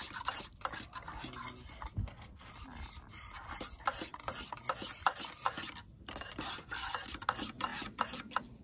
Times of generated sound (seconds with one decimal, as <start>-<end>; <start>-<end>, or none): 2.0-2.5